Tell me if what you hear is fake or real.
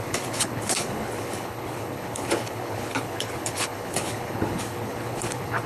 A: fake